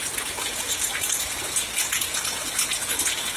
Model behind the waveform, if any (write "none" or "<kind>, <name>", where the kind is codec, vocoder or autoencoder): vocoder, Vocos